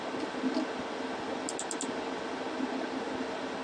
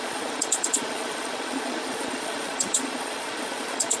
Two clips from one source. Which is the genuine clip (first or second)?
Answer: first